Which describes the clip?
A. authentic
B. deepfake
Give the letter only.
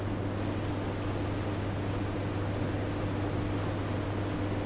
A